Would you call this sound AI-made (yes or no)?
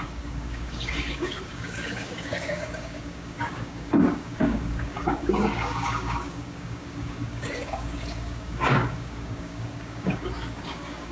yes